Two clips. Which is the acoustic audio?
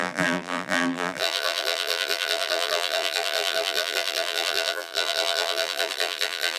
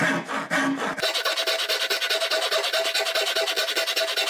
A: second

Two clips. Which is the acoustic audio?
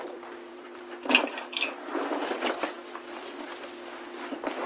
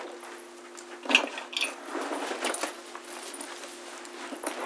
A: second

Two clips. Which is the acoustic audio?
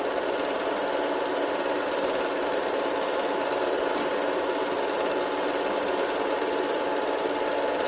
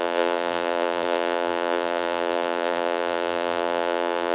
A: first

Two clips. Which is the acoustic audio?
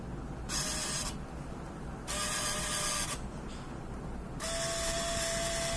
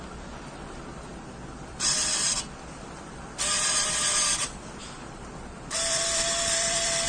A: first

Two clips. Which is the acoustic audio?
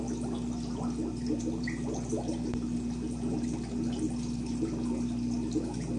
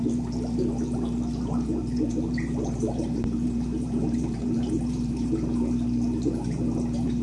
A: first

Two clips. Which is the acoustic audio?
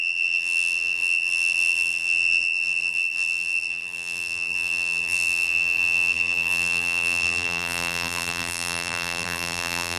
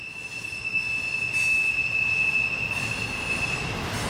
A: second